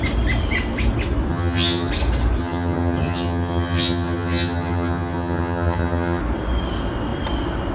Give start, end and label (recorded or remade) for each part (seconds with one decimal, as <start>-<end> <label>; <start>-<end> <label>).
0.0-1.3 recorded; 1.3-1.9 remade; 1.9-2.4 recorded; 2.4-6.2 remade; 6.2-7.7 recorded